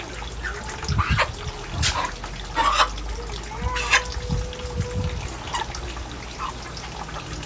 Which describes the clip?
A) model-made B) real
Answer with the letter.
B